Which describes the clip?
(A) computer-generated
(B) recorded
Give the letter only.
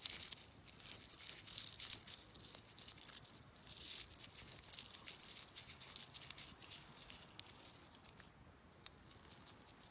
B